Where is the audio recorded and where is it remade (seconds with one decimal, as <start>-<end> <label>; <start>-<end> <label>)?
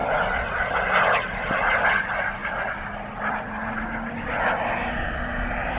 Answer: 0.0-5.8 recorded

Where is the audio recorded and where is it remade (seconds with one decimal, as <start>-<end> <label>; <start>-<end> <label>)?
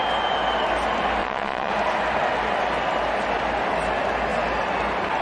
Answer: 0.0-1.2 recorded; 1.2-1.7 remade; 1.7-5.2 recorded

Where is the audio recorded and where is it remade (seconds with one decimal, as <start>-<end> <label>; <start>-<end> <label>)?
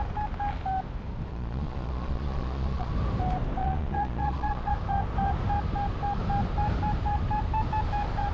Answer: 0.0-1.3 recorded; 1.3-2.9 remade; 2.9-3.6 recorded; 3.6-4.7 remade; 4.7-8.3 recorded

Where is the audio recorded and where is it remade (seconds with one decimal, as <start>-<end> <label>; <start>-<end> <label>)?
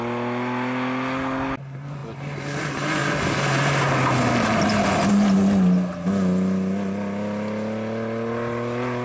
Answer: 0.0-9.0 recorded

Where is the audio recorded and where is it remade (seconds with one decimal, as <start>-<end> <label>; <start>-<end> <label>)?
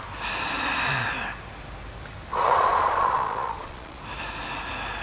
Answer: 0.0-2.3 recorded; 2.3-4.0 remade; 4.0-5.0 recorded